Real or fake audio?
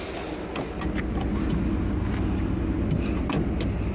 real